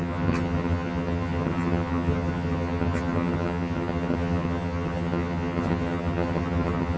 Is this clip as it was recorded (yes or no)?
no